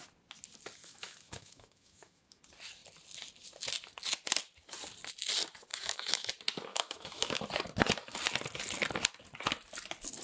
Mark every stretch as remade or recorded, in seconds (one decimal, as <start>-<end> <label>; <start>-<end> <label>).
0.0-0.8 recorded; 0.8-2.4 remade; 2.4-5.7 recorded; 5.7-6.3 remade; 6.3-6.7 recorded; 6.7-7.4 remade; 7.4-10.2 recorded